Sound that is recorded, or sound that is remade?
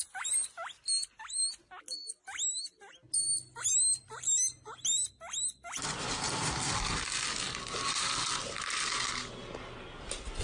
recorded